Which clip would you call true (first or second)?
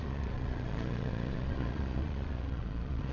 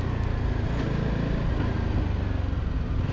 second